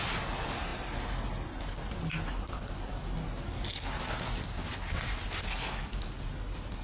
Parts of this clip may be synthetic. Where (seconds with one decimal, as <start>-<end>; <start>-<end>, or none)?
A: none